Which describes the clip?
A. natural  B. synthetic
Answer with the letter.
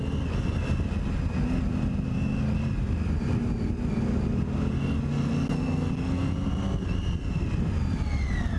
A